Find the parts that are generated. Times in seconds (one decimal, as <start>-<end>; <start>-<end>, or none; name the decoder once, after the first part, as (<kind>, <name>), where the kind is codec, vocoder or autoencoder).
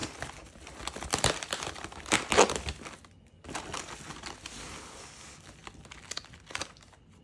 none